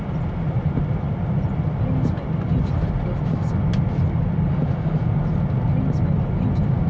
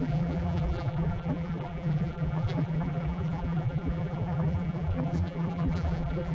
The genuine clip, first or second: first